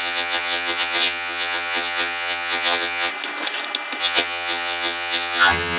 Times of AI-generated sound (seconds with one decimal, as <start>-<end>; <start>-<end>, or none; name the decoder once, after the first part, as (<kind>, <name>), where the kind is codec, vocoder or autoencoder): 0.0-3.1 (vocoder, HiFi-GAN); 4.0-5.8